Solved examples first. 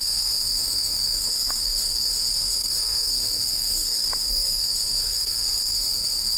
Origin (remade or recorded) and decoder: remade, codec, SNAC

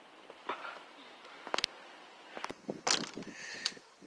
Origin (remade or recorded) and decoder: recorded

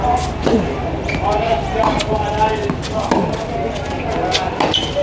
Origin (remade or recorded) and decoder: recorded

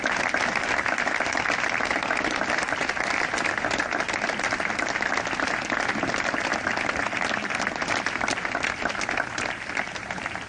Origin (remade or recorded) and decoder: recorded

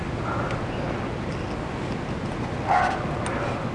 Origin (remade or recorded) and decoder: recorded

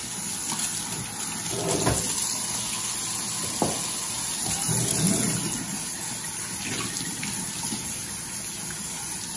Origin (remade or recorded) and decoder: recorded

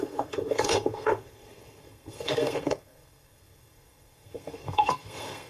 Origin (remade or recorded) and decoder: remade, codec, SNAC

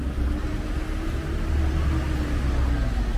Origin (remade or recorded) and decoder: recorded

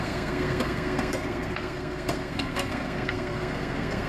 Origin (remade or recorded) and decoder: remade, codec, SNAC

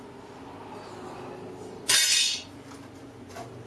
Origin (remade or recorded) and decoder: recorded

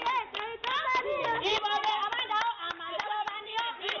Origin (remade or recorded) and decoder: recorded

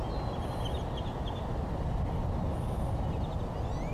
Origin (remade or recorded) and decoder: recorded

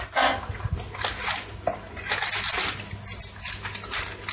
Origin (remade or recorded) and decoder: recorded